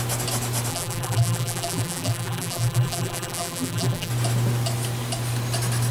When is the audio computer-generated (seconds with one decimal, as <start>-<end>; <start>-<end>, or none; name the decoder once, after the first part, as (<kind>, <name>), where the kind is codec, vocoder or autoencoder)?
0.7-4.1 (vocoder, BigVGAN v2)